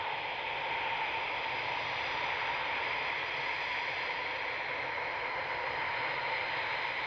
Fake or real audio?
real